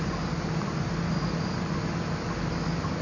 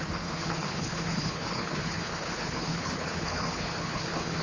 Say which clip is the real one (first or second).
first